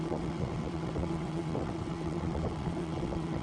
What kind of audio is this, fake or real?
fake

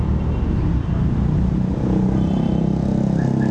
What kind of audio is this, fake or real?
real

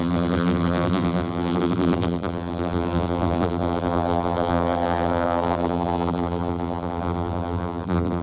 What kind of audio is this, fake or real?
fake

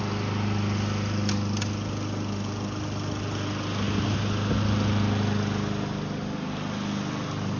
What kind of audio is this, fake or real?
real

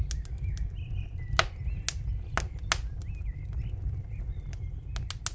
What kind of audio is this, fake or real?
real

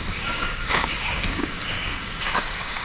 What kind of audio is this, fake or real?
fake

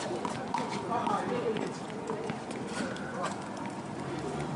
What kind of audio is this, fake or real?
fake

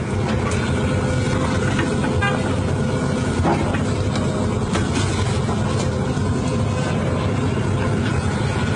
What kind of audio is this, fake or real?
real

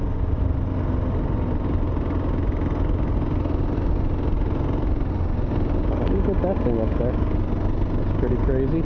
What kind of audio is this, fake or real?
real